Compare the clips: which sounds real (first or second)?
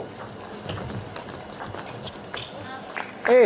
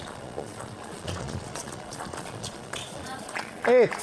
first